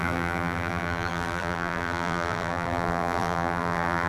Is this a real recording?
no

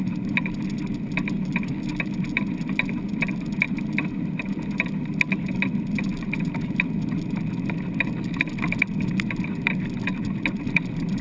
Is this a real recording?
yes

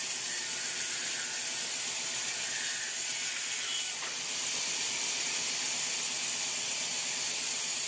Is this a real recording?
yes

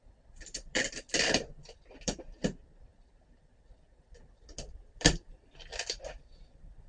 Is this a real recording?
no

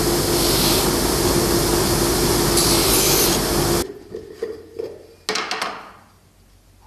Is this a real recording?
yes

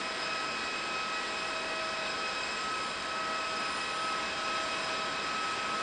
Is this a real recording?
yes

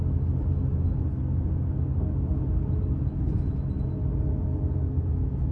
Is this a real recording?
yes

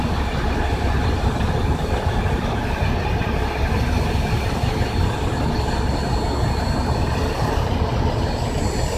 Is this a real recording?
yes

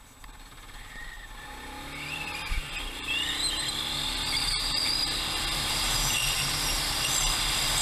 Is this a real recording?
yes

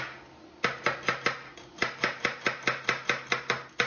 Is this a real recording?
yes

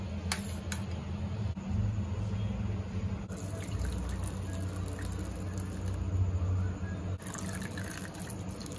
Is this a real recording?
yes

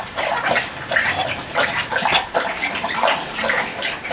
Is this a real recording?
no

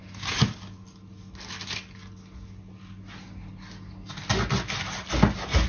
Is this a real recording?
yes